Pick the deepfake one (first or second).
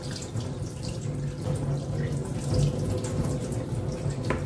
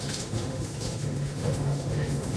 second